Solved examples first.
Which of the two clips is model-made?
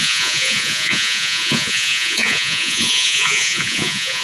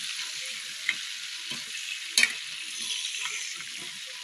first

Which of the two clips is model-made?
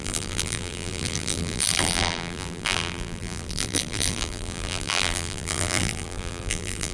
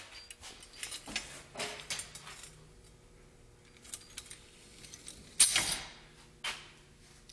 first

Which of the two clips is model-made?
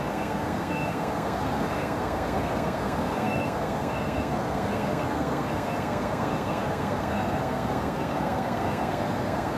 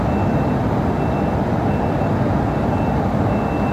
first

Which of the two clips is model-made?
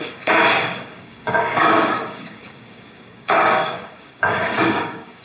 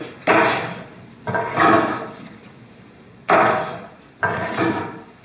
first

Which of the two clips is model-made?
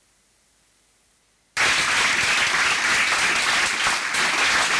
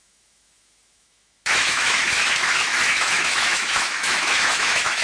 second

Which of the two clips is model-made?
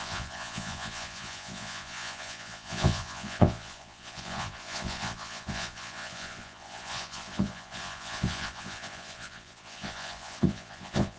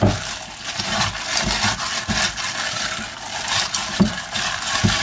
first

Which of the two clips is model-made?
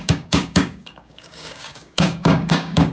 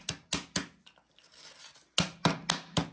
first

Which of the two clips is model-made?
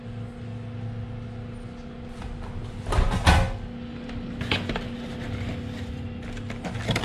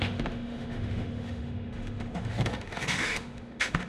second